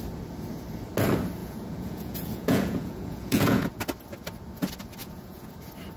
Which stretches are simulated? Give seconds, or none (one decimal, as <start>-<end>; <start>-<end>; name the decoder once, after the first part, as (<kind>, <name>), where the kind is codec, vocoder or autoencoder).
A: 1.4-3.8 (vocoder, Vocos); 5.0-5.5